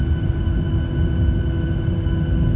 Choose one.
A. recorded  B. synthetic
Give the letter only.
A